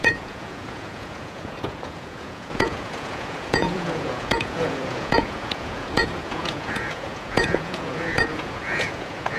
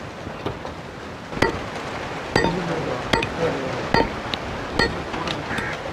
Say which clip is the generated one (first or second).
first